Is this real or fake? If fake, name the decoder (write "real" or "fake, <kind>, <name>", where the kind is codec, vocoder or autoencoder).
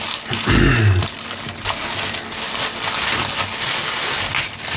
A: real